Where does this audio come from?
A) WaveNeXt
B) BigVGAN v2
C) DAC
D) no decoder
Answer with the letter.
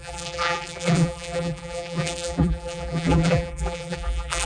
B